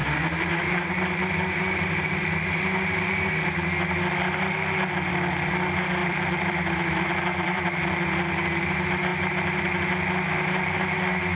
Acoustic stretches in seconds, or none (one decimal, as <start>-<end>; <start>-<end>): 0.0-6.0; 7.7-9.1; 9.6-11.3